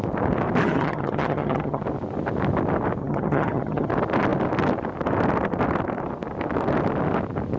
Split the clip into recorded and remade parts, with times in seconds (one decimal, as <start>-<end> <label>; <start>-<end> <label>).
0.0-0.6 recorded; 0.6-1.8 remade; 1.8-3.0 recorded; 3.0-3.9 remade; 3.9-7.6 recorded